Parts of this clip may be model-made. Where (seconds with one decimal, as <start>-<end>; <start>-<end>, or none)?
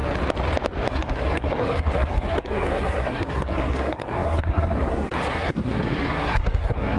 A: 0.9-7.0